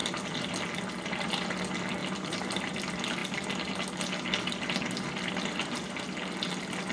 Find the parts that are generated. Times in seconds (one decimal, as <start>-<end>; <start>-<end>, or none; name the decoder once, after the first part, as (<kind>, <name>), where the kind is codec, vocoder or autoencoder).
2.0-2.7 (vocoder, BigVGAN v2)